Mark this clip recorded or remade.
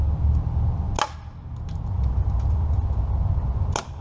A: recorded